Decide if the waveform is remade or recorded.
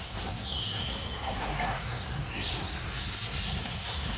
remade